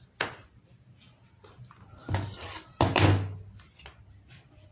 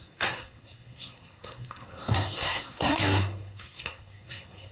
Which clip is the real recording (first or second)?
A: first